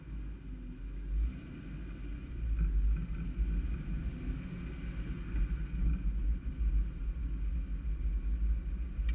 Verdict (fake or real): real